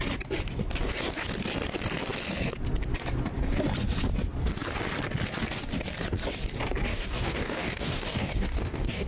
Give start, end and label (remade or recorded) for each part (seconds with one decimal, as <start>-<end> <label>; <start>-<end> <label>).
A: 0.0-6.9 recorded; 6.9-9.1 remade

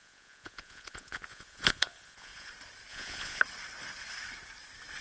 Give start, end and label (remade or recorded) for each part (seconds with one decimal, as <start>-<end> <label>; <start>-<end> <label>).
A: 0.0-2.5 remade; 2.5-2.9 recorded; 2.9-3.4 remade; 3.4-5.0 recorded